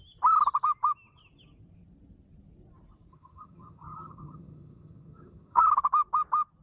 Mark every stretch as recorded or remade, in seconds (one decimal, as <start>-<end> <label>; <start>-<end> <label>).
0.0-3.1 recorded; 3.1-5.6 remade; 5.6-6.6 recorded